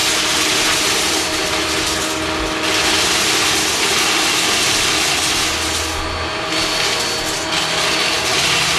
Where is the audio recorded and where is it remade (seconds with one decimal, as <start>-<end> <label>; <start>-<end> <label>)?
0.0-8.8 recorded